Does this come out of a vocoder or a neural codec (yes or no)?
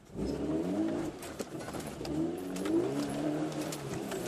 yes